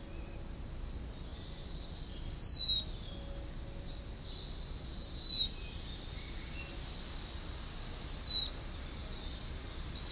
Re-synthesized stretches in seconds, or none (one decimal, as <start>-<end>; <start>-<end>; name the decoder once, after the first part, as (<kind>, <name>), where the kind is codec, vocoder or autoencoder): 1.3-1.9 (vocoder, BigVGAN v2)